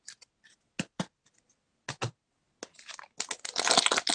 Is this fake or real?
real